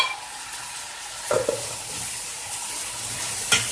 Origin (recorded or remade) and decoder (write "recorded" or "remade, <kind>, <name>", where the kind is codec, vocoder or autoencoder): recorded